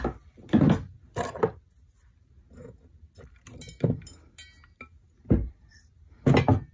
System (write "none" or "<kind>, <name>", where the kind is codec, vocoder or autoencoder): none